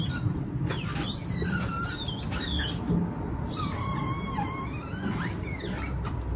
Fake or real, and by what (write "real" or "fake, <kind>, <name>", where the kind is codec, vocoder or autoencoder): real